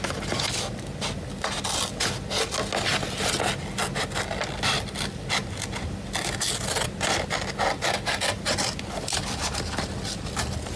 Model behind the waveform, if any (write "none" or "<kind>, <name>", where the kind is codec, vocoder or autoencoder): none